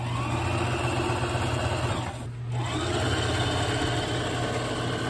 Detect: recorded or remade recorded